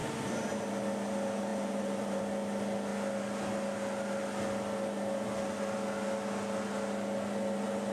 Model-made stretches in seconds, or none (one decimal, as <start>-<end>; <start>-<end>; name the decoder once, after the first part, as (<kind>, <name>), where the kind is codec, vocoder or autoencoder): 0.0-0.6 (vocoder, BigVGAN v2); 1.5-2.2